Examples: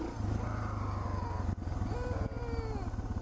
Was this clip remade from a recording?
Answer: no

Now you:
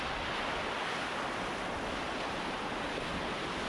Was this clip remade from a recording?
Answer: no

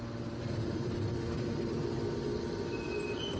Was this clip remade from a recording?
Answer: yes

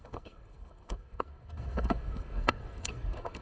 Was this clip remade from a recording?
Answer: yes